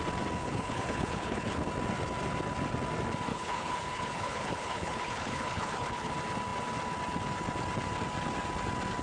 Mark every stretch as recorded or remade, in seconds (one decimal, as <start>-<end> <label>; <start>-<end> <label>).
0.0-0.4 recorded; 0.4-1.7 remade; 1.7-3.3 recorded; 3.3-6.1 remade; 6.1-9.0 recorded